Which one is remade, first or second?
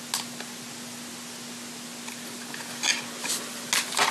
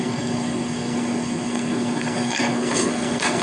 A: second